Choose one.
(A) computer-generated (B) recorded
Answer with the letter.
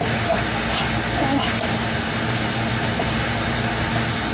B